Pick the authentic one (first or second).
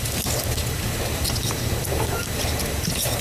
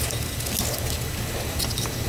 second